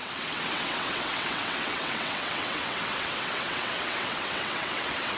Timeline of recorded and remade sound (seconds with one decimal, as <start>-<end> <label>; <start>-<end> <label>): 0.0-5.2 remade

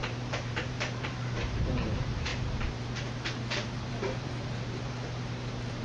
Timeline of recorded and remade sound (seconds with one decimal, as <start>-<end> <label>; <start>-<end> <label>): 0.0-5.8 remade

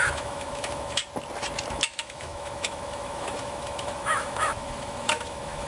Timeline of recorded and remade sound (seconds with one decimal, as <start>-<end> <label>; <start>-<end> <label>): 0.0-1.0 remade; 1.0-1.7 recorded; 1.7-5.7 remade

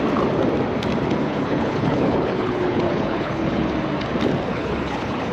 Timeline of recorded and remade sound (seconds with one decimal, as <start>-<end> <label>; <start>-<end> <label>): 0.0-1.2 recorded; 1.2-3.7 remade; 3.7-4.5 recorded; 4.5-5.3 remade

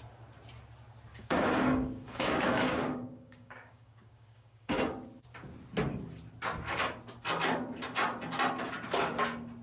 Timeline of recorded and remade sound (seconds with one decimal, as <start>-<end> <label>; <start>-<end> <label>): 0.0-1.1 recorded; 1.1-4.8 remade; 4.8-9.6 recorded

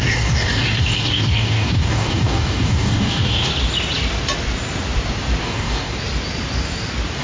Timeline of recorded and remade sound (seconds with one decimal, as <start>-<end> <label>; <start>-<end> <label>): 0.0-3.5 remade; 3.5-5.4 recorded; 5.4-5.9 remade; 5.9-7.2 recorded